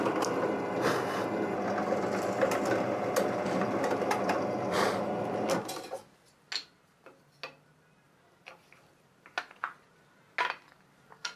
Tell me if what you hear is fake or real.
real